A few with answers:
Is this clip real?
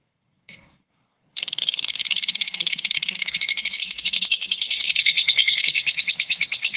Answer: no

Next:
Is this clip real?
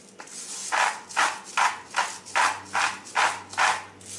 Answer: yes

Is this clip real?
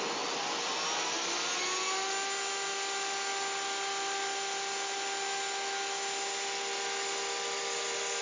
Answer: yes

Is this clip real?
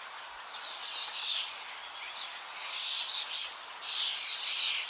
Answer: yes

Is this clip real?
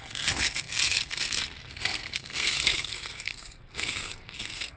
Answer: no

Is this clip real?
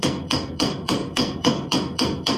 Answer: no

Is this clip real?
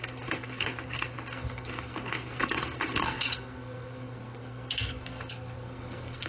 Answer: no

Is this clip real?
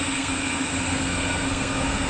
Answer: no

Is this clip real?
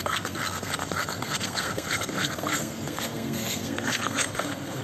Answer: no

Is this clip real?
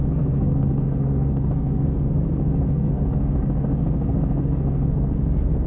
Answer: no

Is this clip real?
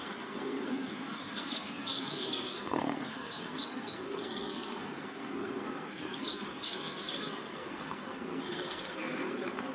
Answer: no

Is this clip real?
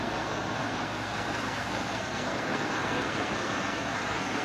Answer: no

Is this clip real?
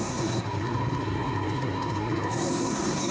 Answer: no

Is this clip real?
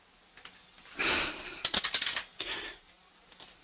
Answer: yes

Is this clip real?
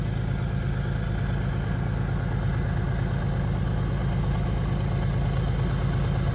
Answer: yes